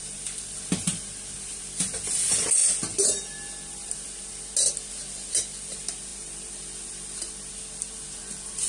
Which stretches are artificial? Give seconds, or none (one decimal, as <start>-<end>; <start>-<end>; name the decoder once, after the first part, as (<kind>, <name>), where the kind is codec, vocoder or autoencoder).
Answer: none